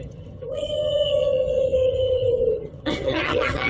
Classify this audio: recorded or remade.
remade